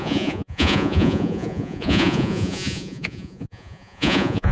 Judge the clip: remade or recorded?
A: remade